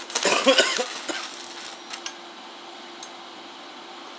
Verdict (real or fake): real